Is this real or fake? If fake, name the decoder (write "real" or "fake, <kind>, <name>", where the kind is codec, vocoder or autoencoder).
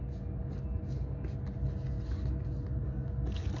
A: real